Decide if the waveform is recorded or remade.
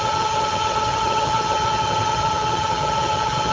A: remade